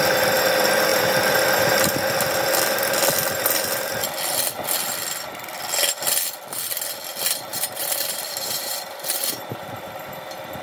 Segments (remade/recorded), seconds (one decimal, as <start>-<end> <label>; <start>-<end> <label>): 0.0-7.5 recorded; 7.5-10.2 remade; 10.2-10.6 recorded